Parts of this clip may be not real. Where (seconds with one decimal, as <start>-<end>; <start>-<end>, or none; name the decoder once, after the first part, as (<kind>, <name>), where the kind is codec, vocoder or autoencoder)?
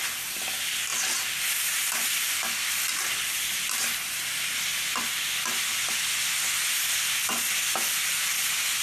none